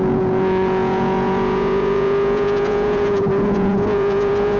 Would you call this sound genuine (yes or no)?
no